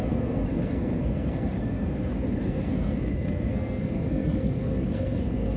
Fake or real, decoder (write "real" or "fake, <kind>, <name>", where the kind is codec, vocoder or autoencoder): fake, codec, SNAC